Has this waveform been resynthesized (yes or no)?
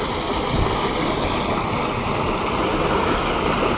no